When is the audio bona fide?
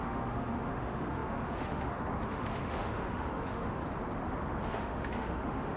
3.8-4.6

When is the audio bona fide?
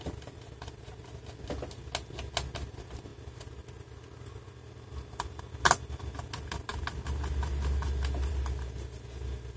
0.0-9.6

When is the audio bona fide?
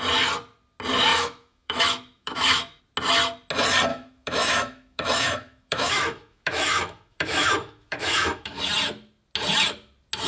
0.0-1.1; 2.8-3.9; 8.6-10.3